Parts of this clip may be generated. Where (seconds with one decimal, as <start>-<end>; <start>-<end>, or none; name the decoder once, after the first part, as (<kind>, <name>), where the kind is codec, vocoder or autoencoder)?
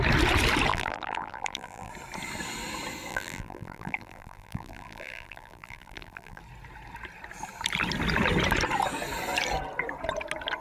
0.7-1.9 (vocoder, BigVGAN v2); 3.1-6.4